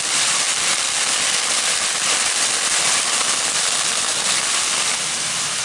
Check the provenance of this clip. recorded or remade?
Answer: recorded